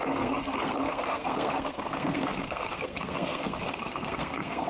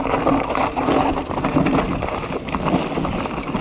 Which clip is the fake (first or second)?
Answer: first